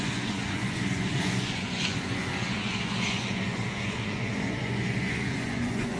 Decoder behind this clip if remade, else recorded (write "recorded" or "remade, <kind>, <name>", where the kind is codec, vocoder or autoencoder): remade, vocoder, Vocos